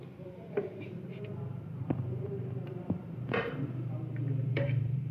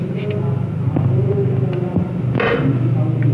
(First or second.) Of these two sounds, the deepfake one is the first